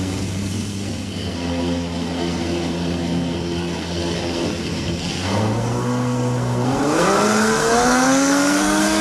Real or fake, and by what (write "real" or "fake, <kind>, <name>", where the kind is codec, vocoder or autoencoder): fake, codec, SNAC